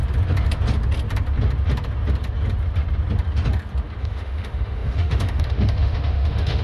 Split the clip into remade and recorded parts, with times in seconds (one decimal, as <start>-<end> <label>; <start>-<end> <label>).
0.0-4.0 recorded; 4.0-6.6 remade